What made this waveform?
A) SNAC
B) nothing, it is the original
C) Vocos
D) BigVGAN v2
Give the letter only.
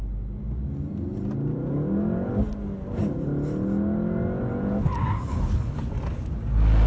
B